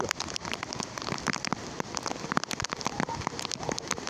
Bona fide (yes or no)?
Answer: yes